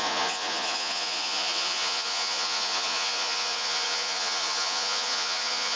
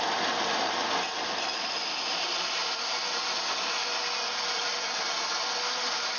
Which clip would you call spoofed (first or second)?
first